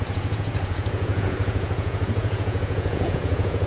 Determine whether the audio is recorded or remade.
remade